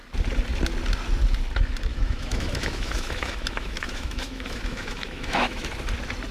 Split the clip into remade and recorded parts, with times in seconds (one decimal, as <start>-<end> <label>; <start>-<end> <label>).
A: 0.0-1.9 recorded; 1.9-5.7 remade; 5.7-6.3 recorded